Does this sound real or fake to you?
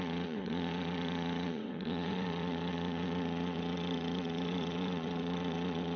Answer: fake